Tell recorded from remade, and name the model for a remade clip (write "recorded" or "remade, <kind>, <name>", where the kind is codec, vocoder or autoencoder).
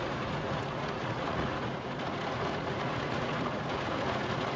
remade, vocoder, Vocos